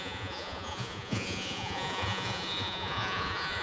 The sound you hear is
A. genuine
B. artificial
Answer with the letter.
B